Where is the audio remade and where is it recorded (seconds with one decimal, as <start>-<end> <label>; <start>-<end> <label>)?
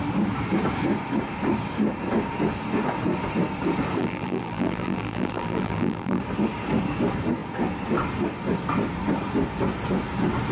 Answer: 0.0-4.0 recorded; 4.0-6.2 remade; 6.2-10.5 recorded